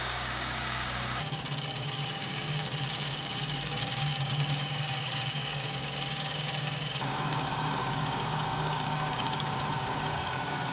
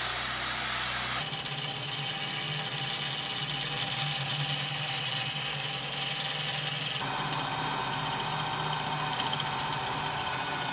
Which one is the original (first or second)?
second